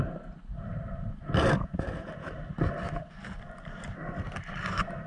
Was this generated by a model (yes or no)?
no